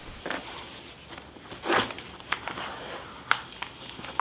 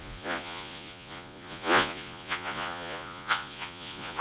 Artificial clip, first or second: second